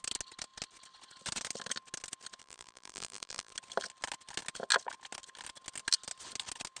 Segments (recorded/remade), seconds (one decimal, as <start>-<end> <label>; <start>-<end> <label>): 0.0-2.4 recorded; 2.4-3.5 remade; 3.5-6.8 recorded